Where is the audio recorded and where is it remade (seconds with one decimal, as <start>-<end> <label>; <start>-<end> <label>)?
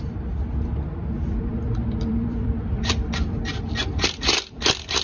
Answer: 0.0-1.5 recorded; 1.5-3.4 remade; 3.4-5.0 recorded